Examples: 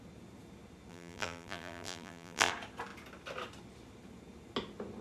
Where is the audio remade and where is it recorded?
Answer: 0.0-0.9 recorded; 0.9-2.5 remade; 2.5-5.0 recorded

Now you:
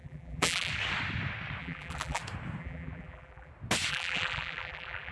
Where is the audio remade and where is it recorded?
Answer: 0.0-0.7 remade; 0.7-1.6 recorded; 1.6-2.2 remade; 2.2-2.6 recorded; 2.6-3.5 remade; 3.5-3.9 recorded; 3.9-5.1 remade

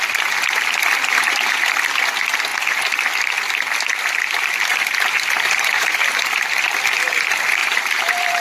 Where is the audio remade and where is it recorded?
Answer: 0.0-4.7 recorded; 4.7-6.1 remade; 6.1-7.6 recorded; 7.6-8.4 remade